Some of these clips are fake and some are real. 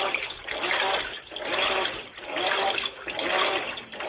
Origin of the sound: real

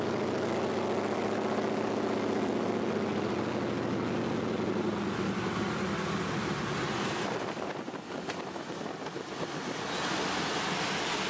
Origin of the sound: real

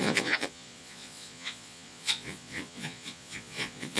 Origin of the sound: fake